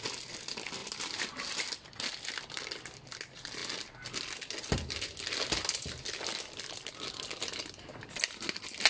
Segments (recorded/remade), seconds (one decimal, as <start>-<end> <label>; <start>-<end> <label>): 0.0-8.9 recorded